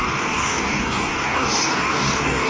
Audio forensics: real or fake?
fake